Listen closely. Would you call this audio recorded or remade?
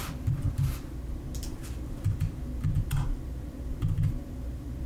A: remade